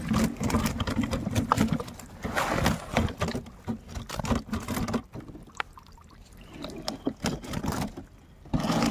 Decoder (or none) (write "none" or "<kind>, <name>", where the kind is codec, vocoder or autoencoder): none